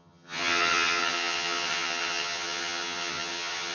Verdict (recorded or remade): remade